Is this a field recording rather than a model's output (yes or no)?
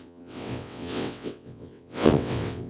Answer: no